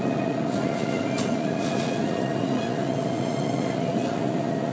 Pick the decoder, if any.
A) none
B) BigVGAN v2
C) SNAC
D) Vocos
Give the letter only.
D